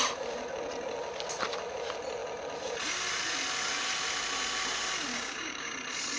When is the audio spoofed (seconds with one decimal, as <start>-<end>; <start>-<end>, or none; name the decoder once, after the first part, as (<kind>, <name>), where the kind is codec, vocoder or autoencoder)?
5.1-5.7 (codec, DAC)